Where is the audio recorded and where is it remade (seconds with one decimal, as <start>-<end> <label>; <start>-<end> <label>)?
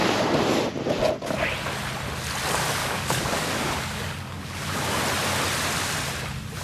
0.0-2.8 recorded; 2.8-5.0 remade; 5.0-6.6 recorded